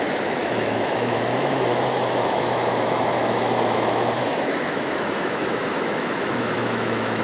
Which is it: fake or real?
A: fake